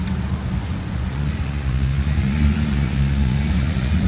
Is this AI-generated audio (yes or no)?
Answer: yes